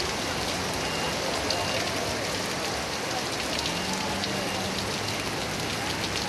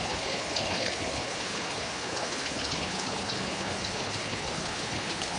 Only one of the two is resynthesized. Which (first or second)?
second